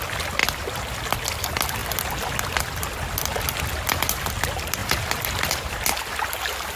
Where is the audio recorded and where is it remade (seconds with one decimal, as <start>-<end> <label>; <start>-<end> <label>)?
0.0-0.4 recorded; 0.4-1.0 remade; 1.0-4.8 recorded; 4.8-5.5 remade; 5.5-6.8 recorded